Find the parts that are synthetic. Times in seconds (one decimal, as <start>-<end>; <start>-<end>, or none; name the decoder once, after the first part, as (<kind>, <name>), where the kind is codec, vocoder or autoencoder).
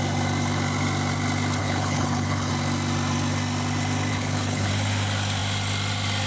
1.6-2.5 (codec, HILCodec); 4.1-4.7